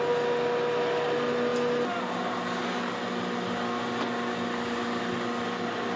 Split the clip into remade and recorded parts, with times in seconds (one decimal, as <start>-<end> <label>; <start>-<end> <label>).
0.0-6.0 recorded